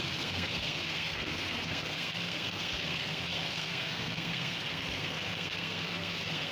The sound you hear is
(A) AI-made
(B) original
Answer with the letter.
A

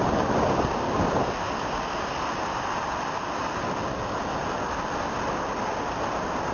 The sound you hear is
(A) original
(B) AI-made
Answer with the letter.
A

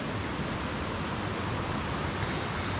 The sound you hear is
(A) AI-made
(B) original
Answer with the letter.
B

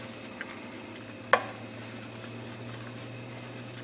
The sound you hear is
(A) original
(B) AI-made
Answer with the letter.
A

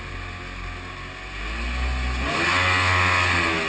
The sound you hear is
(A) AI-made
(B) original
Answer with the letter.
B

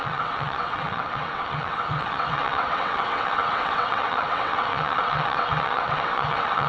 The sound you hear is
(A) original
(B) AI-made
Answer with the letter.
B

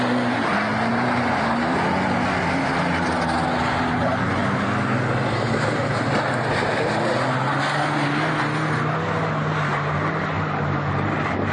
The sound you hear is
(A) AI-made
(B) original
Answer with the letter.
B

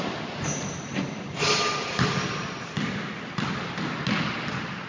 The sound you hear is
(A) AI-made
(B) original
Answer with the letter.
B